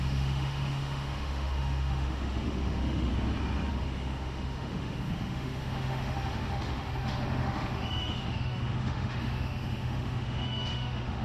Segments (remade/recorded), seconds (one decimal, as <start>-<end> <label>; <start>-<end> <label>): 0.0-3.1 remade; 3.1-3.7 recorded; 3.7-11.2 remade